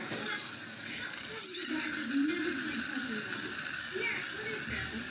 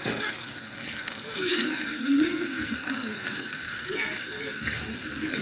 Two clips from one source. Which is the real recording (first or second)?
first